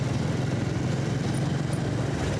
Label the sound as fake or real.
real